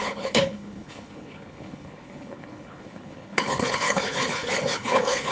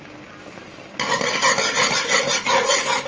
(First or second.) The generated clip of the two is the first